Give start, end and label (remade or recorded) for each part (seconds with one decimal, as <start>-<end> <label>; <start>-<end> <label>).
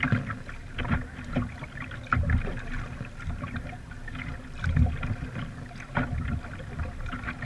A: 0.0-7.5 recorded